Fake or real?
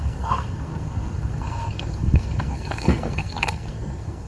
fake